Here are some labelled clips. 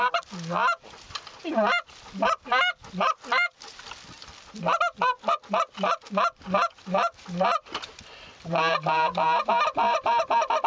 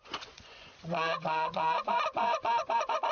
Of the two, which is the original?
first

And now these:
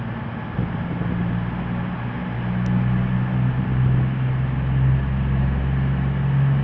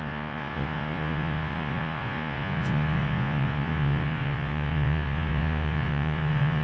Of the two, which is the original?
first